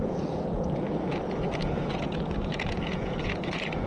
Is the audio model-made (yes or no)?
yes